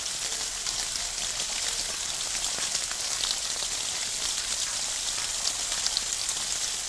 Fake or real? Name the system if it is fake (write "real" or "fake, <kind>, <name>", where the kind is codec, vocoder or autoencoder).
real